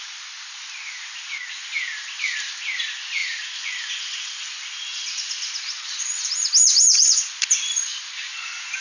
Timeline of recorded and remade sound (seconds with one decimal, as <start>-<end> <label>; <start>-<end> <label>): 0.0-3.2 recorded; 3.2-4.4 remade; 4.4-4.9 recorded; 4.9-5.5 remade; 5.5-8.8 recorded